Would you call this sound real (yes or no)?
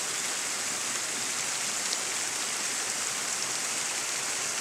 yes